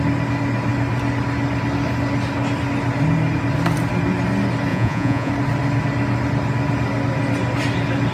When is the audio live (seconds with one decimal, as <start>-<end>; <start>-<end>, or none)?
0.0-4.7; 5.3-8.1